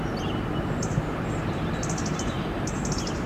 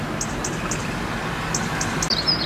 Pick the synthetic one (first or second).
first